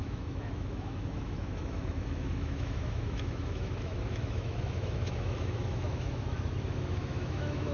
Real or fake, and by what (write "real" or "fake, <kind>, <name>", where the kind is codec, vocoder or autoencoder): fake, autoencoder, DAC-VAE